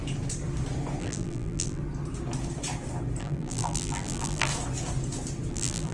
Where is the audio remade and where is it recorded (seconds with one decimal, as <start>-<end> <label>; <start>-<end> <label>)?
0.0-1.0 recorded; 1.0-1.8 remade; 1.8-3.2 recorded; 3.2-4.5 remade; 4.5-5.5 recorded; 5.5-5.9 remade